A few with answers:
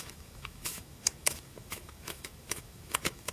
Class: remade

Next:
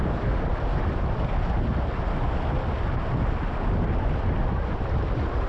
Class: recorded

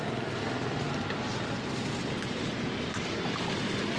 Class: recorded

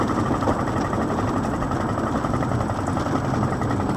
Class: recorded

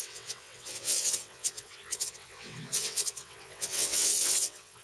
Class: remade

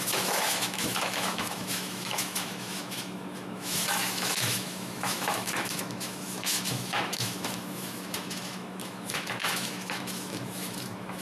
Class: remade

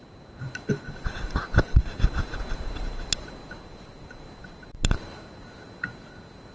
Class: recorded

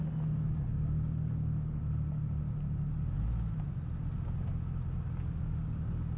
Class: recorded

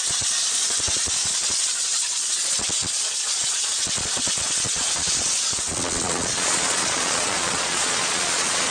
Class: remade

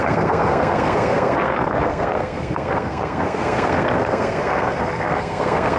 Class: remade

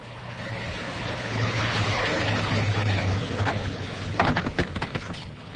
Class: remade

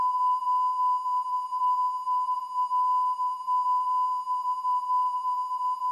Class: remade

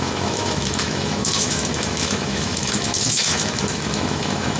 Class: remade